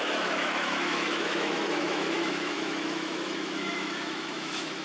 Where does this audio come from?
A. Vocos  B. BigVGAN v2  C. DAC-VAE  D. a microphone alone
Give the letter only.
C